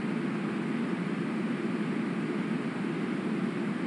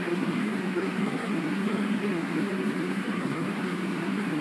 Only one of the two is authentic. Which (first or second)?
first